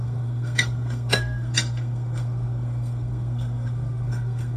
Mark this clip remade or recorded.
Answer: remade